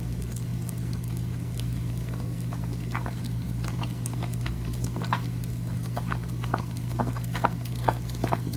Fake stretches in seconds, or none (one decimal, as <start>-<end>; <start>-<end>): 0.0-8.6